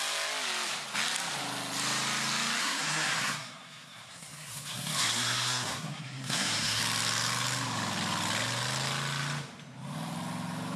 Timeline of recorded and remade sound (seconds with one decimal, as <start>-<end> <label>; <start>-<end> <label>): 0.0-2.6 recorded; 2.6-6.8 remade; 6.8-10.8 recorded